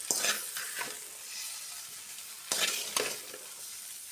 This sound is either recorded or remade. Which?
recorded